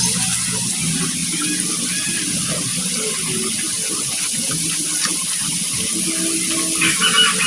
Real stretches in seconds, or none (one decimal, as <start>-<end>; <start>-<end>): 0.0-7.5